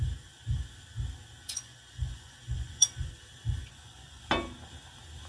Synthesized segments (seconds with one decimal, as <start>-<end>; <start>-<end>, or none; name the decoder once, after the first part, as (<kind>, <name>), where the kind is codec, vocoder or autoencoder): 1.4-3.1 (vocoder, Vocos); 3.6-4.2